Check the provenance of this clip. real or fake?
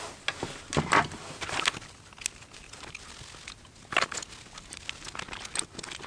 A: real